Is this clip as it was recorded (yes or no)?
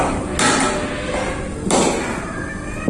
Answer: yes